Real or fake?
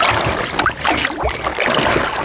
real